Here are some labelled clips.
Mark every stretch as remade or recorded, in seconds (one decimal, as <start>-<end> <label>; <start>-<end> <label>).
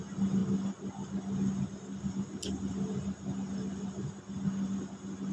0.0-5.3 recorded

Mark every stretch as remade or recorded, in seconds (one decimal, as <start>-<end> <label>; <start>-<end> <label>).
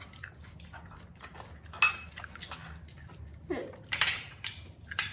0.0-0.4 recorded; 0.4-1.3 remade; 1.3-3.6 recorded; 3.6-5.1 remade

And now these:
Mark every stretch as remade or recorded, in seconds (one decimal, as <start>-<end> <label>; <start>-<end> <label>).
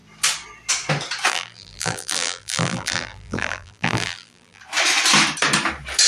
0.0-1.3 recorded; 1.3-4.6 remade; 4.6-6.1 recorded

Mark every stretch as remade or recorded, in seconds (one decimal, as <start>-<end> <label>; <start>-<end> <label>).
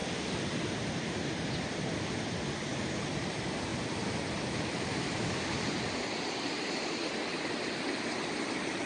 0.0-0.9 remade; 0.9-3.7 recorded; 3.7-6.3 remade; 6.3-8.9 recorded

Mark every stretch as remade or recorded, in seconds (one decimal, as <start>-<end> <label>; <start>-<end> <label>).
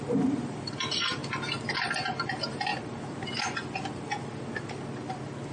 0.0-1.2 remade; 1.2-1.7 recorded; 1.7-2.7 remade; 2.7-5.5 recorded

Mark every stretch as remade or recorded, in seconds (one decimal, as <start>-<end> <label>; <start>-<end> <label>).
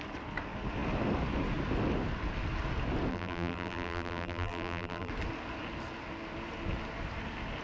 0.0-3.1 recorded; 3.1-5.1 remade; 5.1-7.6 recorded